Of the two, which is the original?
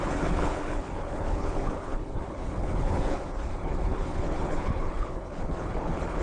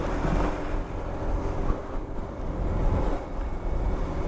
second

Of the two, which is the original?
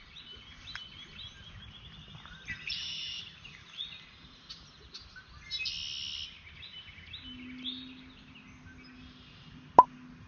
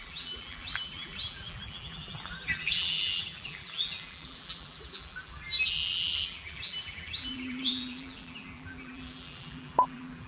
first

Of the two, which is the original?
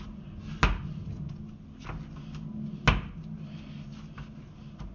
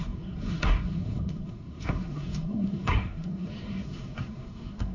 first